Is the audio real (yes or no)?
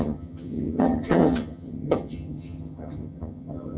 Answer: no